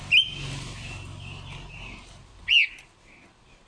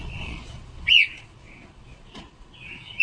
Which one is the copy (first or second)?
second